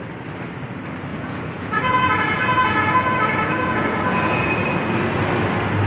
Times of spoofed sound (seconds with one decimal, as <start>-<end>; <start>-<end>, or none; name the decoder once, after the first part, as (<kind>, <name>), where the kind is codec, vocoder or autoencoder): 1.1-4.6 (vocoder, Vocos)